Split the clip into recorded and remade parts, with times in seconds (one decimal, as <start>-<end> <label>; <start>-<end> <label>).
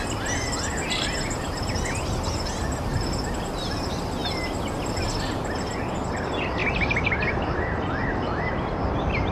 0.0-9.3 recorded